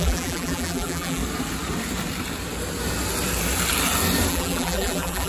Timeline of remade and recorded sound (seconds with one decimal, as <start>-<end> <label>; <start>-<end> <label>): 0.0-1.2 remade; 1.2-4.3 recorded; 4.3-5.3 remade